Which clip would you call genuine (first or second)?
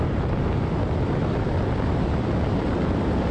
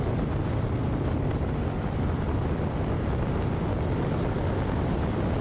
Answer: second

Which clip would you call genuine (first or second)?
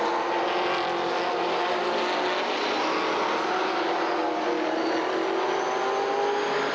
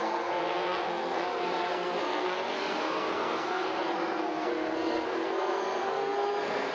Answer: first